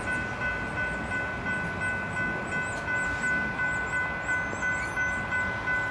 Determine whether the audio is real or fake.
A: real